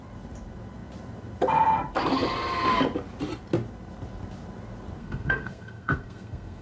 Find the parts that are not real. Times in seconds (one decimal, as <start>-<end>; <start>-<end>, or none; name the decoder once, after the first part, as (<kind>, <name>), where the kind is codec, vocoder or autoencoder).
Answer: 5.0-6.6 (codec, SNAC)